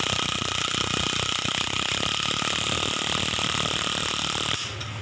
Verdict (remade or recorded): recorded